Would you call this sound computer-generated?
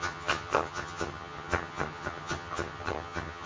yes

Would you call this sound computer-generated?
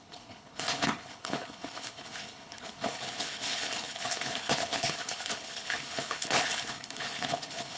yes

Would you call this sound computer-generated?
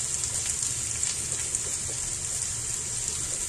no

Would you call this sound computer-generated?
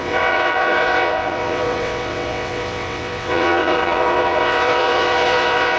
yes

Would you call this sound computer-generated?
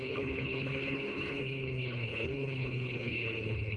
yes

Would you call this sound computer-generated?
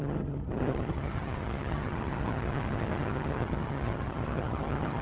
yes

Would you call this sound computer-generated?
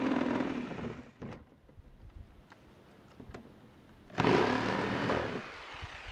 no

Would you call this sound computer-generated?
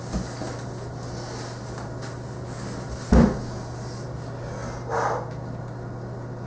no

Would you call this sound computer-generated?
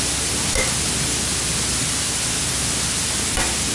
no